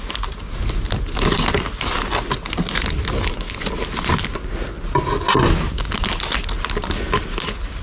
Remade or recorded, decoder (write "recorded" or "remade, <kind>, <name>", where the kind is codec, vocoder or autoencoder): recorded